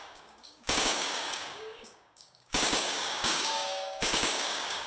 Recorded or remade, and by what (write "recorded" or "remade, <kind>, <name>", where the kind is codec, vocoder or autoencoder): remade, codec, DAC